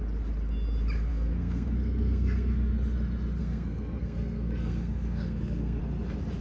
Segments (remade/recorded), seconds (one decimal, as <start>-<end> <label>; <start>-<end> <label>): 0.0-1.1 recorded; 1.1-2.7 remade; 2.7-3.4 recorded; 3.4-5.8 remade; 5.8-6.4 recorded